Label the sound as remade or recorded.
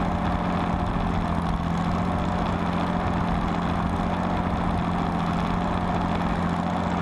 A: recorded